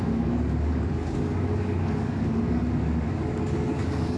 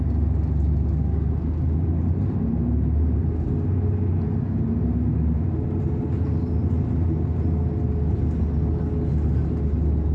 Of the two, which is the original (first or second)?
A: second